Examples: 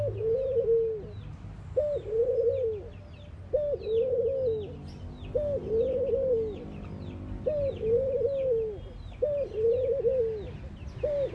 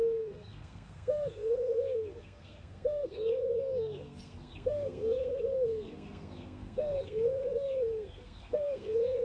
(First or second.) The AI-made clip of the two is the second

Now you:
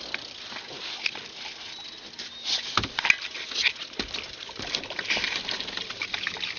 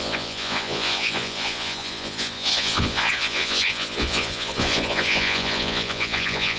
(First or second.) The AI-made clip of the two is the second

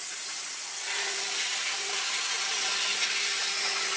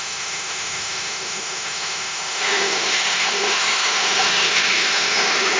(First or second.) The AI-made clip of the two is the second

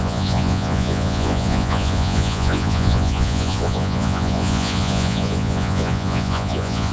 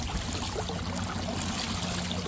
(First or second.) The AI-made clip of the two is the first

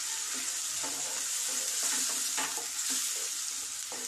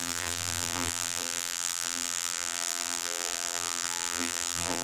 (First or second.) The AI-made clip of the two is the second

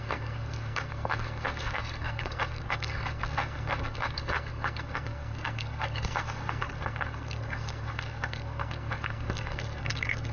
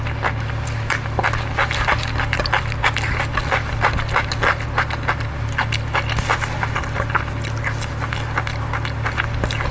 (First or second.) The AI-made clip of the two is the first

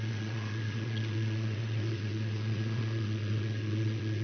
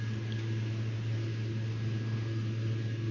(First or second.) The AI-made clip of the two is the first